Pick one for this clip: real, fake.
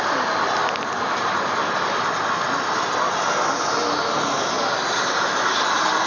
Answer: real